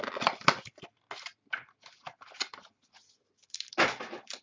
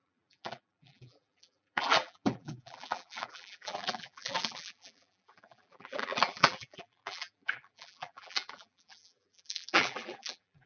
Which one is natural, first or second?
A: first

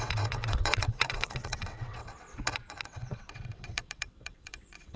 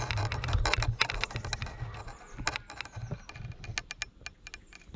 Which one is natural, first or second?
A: second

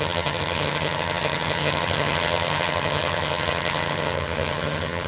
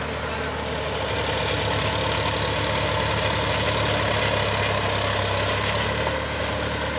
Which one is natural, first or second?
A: second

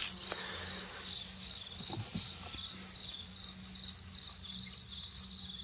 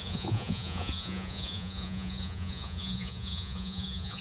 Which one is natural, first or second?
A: first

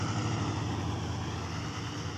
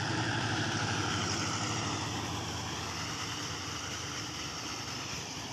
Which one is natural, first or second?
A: first